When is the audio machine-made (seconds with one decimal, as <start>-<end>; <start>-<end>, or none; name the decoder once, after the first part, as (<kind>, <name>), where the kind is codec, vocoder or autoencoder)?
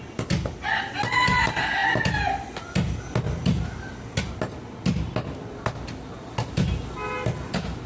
none